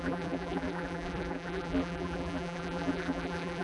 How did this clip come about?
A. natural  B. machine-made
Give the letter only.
B